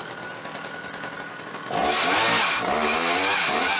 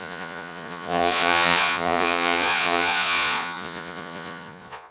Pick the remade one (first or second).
second